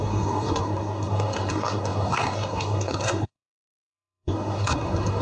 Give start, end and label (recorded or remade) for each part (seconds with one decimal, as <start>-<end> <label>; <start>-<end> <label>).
0.0-5.2 remade